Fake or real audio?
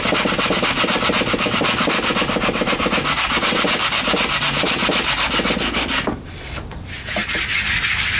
real